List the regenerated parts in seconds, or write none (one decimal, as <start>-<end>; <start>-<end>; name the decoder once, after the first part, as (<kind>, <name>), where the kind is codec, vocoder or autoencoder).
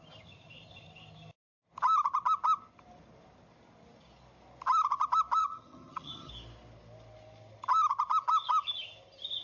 5.4-6.3 (vocoder, HiFi-GAN)